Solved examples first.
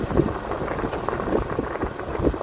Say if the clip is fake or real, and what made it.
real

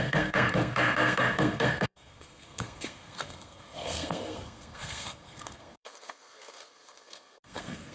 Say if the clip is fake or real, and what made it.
fake, codec, SNAC